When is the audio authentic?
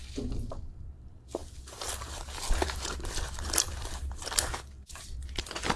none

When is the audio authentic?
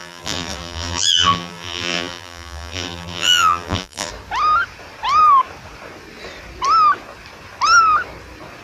4.1-8.6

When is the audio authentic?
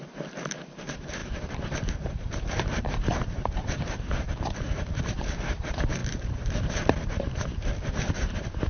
none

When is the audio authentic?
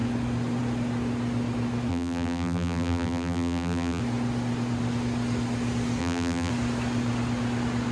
0.0-1.9; 4.0-6.0; 6.5-7.9